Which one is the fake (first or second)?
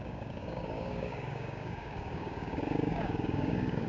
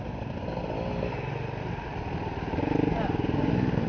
first